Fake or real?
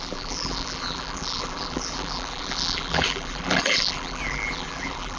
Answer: fake